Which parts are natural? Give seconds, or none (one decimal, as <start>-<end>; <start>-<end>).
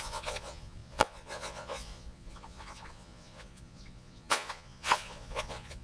none